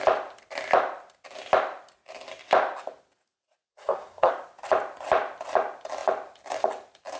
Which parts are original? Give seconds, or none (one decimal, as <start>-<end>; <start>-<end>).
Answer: 0.0-3.7; 4.3-7.2

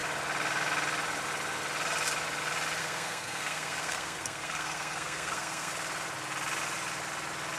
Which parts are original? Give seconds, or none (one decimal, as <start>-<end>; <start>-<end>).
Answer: 0.0-2.8; 5.7-7.6

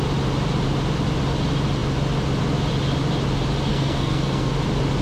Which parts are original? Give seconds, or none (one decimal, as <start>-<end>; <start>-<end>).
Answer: 0.0-3.7; 4.5-5.0